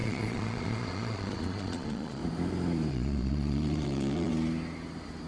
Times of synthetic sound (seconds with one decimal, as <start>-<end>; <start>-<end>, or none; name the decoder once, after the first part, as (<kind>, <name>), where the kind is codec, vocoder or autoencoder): 0.0-2.2 (vocoder, Vocos); 2.9-4.3